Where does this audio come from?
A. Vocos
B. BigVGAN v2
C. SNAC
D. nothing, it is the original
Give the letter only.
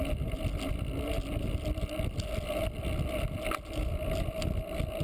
D